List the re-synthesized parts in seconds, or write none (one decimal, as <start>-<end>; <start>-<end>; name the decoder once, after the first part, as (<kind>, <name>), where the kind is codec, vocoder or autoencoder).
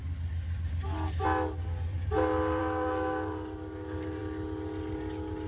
2.6-4.2 (codec, DAC)